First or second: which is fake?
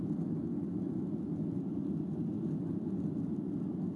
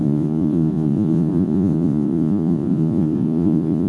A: second